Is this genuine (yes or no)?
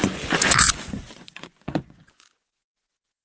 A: no